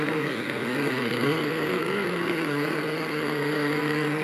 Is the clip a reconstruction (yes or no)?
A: yes